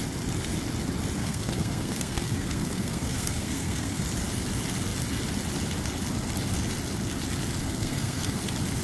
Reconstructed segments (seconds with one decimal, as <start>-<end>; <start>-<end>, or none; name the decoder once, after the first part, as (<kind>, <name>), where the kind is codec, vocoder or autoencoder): 1.2-4.0 (codec, SNAC); 7.6-8.4